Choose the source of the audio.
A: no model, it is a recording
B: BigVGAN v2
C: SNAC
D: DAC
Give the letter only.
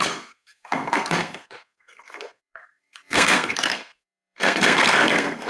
C